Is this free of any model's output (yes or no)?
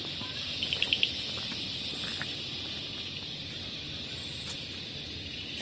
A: yes